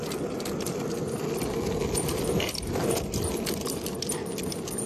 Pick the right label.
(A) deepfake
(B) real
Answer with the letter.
B